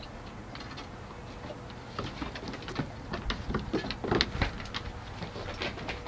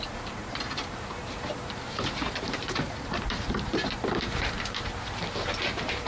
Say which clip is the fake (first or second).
second